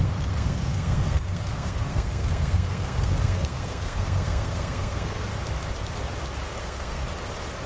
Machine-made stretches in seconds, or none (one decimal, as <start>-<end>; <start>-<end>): 0.0-5.3; 6.6-7.0